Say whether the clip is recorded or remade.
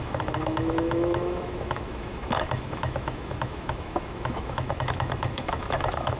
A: remade